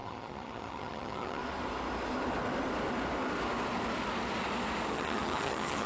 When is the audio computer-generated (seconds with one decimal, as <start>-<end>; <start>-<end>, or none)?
0.0-1.4; 4.9-5.9